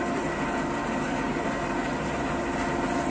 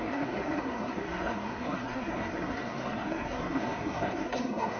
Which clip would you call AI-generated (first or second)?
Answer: second